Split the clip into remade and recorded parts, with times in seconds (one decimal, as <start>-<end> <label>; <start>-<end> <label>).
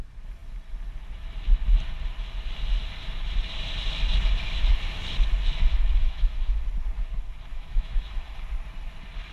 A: 0.0-6.0 recorded; 6.0-6.6 remade; 6.6-7.5 recorded; 7.5-8.2 remade; 8.2-9.3 recorded